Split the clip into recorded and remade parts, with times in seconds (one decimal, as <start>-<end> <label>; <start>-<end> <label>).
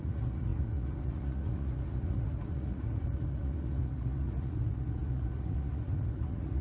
0.0-6.6 remade